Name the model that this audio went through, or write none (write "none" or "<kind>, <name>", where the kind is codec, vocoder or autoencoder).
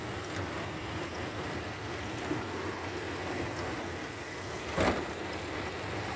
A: none